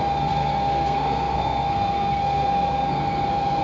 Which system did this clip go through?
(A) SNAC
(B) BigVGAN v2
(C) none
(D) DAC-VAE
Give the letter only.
A